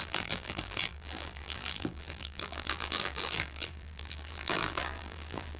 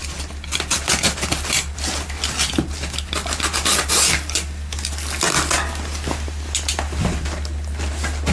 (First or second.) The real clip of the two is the second